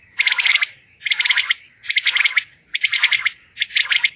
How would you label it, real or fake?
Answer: fake